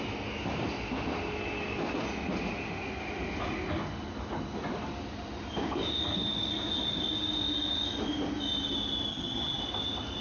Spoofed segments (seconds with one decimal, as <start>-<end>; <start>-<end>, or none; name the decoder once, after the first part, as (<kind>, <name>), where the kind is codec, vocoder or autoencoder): 9.1-9.6 (vocoder, HiFi-GAN)